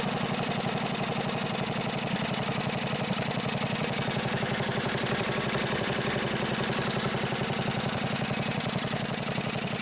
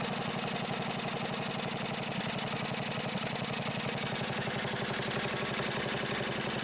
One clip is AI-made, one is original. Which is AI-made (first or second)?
first